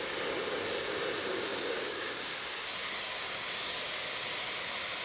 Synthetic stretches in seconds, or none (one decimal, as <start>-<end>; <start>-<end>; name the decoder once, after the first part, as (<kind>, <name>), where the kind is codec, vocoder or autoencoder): 1.5-2.4 (codec, DAC); 2.8-4.0